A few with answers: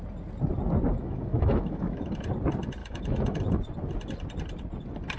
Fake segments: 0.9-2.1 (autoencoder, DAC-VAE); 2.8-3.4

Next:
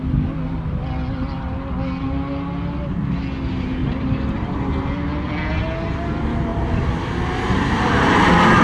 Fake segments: 3.8-4.9 (vocoder, BigVGAN v2)

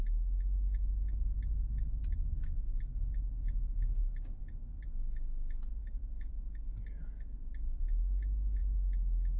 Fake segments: 5.8-6.7 (vocoder, BigVGAN v2)

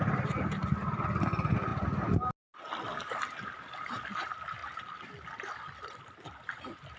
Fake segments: none

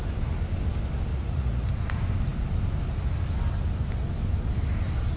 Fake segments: 1.1-1.7 (vocoder, Vocos)